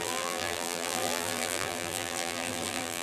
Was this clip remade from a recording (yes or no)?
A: yes